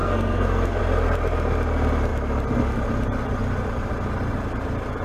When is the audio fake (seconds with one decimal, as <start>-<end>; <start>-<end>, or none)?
0.0-0.8